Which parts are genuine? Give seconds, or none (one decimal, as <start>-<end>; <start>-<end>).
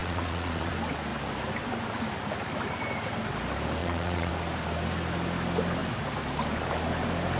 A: 0.7-3.8; 4.3-7.4